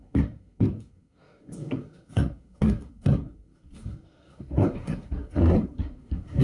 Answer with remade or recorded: remade